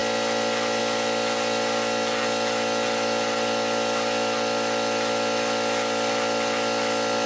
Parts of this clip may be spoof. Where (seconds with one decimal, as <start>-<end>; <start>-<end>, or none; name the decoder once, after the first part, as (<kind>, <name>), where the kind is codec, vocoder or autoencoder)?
none